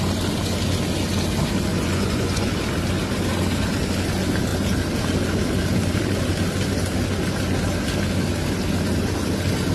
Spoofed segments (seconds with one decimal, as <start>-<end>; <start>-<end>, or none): 1.7-2.5